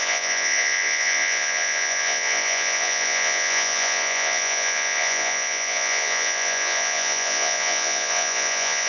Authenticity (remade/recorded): remade